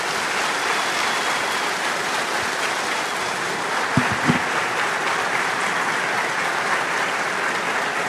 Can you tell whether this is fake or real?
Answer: real